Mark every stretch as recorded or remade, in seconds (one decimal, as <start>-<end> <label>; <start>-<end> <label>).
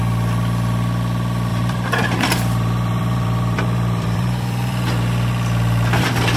0.0-1.5 recorded; 1.5-5.3 remade; 5.3-6.4 recorded